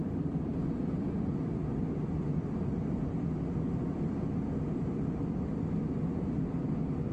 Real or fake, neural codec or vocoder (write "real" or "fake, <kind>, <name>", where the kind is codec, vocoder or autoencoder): real